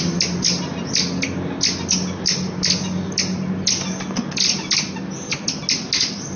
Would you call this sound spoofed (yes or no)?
no